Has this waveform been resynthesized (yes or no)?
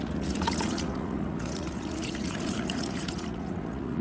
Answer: yes